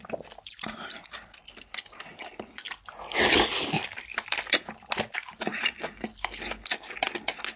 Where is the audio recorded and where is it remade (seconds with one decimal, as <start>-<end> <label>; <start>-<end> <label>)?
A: 0.0-7.6 recorded